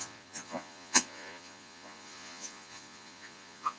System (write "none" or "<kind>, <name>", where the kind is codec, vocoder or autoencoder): vocoder, Vocos